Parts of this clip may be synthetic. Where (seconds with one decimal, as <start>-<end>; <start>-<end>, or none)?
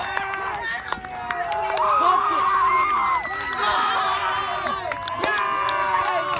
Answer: 1.6-2.4